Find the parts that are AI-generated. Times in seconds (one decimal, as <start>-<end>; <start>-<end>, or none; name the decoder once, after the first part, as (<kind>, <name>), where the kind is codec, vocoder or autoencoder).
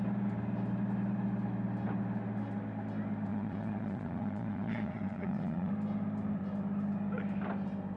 3.3-5.7 (vocoder, Vocos)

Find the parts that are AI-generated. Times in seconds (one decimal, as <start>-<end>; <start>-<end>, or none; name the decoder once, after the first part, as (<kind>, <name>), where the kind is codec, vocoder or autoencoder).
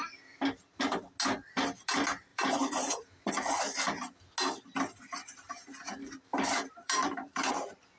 2.3-3.3 (vocoder, BigVGAN v2); 6.0-7.5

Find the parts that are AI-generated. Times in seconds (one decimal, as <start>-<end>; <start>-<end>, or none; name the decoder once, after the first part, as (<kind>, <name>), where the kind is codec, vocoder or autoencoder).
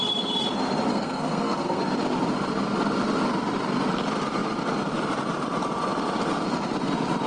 0.9-1.8 (codec, SNAC)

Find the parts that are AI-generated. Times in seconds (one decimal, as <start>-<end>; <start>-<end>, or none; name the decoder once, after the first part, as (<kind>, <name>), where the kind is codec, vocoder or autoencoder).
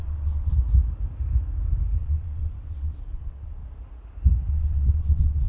0.0-0.5 (vocoder, WaveNeXt); 2.0-3.6; 4.5-5.5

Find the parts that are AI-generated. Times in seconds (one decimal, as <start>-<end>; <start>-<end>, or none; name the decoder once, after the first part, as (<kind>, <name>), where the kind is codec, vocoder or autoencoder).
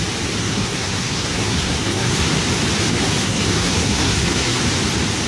0.4-2.4 (codec, SNAC); 2.9-4.6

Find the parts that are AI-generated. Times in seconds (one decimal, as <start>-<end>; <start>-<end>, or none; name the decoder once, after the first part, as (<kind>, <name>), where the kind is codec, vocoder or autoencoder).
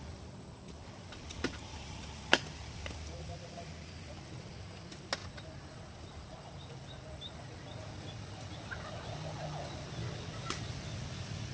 none